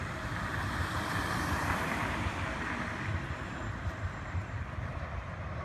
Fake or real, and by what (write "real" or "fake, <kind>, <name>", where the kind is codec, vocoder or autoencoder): fake, vocoder, BigVGAN v2